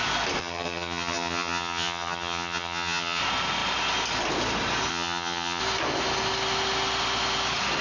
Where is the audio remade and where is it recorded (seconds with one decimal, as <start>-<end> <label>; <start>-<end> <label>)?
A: 0.0-0.4 recorded; 0.4-3.2 remade; 3.2-4.9 recorded; 4.9-5.6 remade; 5.6-7.8 recorded